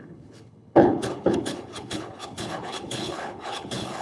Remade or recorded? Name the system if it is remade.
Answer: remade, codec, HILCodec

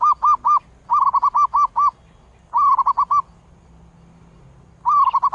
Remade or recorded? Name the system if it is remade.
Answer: recorded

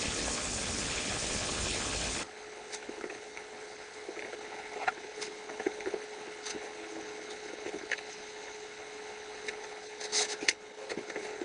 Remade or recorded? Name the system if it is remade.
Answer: remade, codec, HILCodec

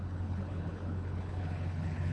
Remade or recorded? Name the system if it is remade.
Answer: remade, codec, HILCodec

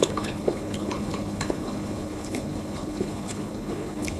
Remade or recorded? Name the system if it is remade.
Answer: remade, codec, HILCodec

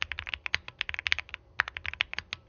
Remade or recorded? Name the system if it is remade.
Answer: recorded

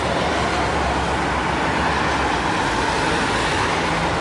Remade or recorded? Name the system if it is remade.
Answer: recorded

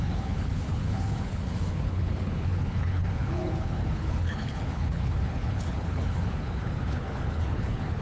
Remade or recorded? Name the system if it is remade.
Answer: remade, codec, HILCodec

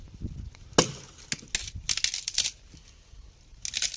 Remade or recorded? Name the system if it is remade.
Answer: recorded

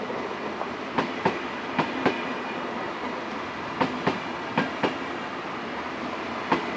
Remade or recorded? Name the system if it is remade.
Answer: recorded